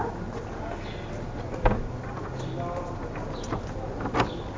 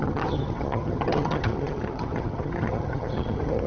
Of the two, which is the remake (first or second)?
second